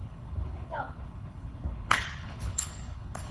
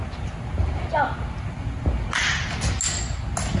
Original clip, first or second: second